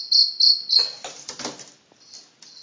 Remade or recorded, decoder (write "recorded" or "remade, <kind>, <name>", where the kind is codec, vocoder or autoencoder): recorded